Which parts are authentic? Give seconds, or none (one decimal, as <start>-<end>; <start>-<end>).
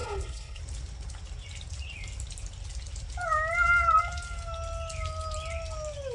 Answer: 0.6-6.1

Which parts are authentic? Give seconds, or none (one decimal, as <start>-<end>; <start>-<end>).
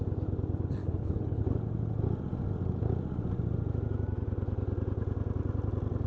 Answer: 0.0-0.8; 1.4-6.1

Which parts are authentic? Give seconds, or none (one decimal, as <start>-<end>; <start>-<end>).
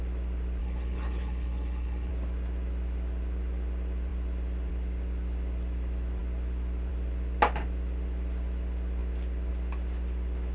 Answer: 0.0-0.6; 2.1-10.5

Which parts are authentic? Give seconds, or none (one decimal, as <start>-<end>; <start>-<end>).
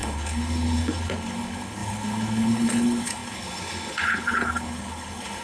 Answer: none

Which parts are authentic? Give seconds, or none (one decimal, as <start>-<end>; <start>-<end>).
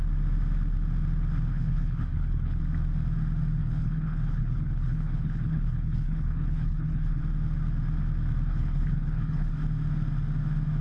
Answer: 0.0-1.5; 2.6-3.6; 7.2-8.5; 9.5-10.8